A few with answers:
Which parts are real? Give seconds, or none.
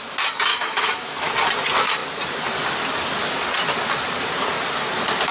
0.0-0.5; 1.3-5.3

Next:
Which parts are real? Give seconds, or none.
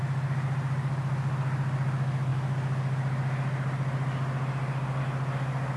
0.0-5.8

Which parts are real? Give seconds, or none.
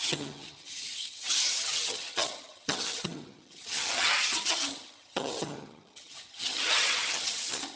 none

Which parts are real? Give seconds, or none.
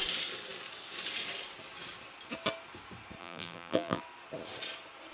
0.0-3.2; 4.0-5.1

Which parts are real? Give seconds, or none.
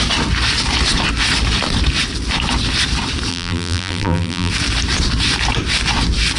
0.0-3.3; 4.5-6.4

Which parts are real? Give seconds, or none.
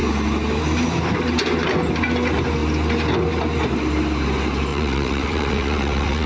0.0-4.7